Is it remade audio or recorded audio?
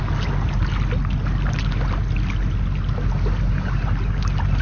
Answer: recorded